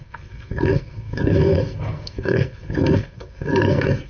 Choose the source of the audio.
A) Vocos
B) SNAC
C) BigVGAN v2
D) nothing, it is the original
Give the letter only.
B